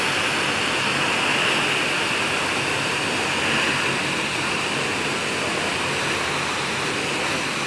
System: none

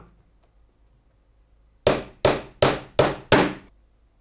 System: none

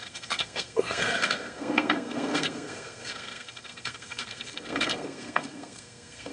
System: codec, SNAC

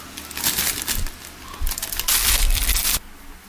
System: none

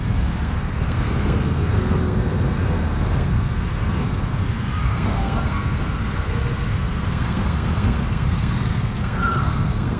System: codec, SNAC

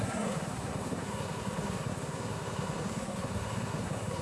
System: codec, SNAC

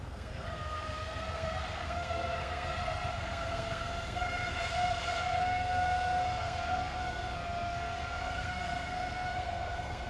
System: codec, SNAC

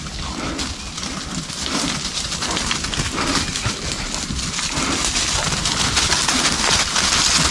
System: none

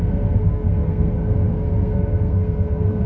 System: codec, SNAC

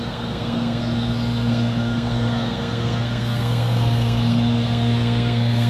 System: codec, SNAC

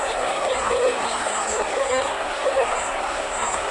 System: codec, SNAC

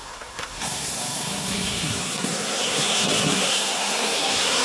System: codec, SNAC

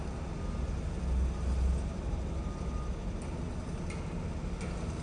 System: none